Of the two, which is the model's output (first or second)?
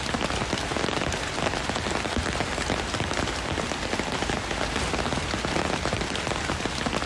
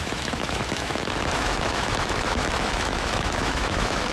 second